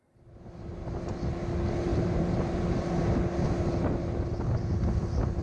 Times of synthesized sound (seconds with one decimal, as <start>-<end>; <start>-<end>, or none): 1.9-3.0